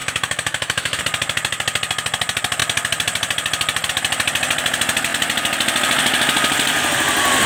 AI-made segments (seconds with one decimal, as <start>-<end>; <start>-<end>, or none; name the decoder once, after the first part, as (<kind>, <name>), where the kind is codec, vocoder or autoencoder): 0.0-1.0 (autoencoder, DAC-VAE)